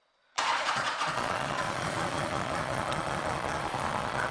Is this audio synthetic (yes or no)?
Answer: yes